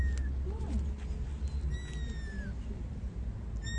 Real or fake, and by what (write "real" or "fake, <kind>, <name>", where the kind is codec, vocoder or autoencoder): real